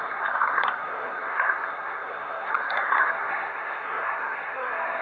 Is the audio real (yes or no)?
no